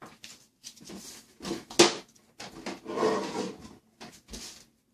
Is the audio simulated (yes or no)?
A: no